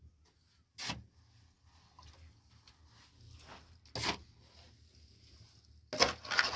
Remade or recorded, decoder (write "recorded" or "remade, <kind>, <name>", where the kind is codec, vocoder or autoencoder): recorded